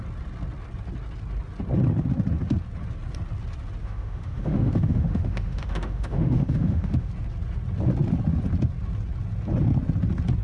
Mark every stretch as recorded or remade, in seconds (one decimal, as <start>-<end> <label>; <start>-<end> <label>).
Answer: 0.0-3.8 recorded; 3.8-7.1 remade; 7.1-10.4 recorded